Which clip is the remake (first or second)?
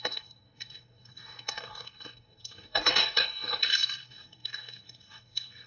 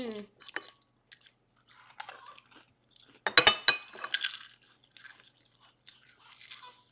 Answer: first